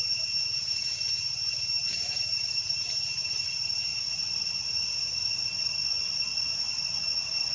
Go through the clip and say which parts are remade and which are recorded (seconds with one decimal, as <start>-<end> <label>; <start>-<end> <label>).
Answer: 0.0-3.9 remade; 3.9-4.7 recorded; 4.7-5.2 remade; 5.2-7.5 recorded